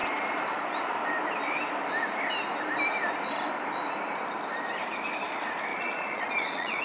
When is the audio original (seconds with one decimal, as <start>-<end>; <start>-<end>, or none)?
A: 0.0-5.7